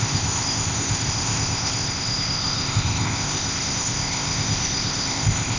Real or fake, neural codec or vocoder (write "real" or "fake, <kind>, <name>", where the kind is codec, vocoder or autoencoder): fake, codec, ZipCodec